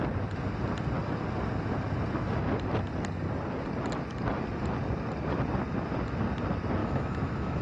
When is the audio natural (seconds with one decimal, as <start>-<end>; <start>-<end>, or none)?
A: 0.0-6.8